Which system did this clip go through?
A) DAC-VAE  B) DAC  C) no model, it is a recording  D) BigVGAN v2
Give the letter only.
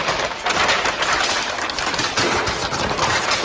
D